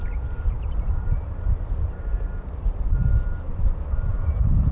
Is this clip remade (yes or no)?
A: yes